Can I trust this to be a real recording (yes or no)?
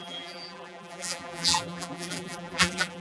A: no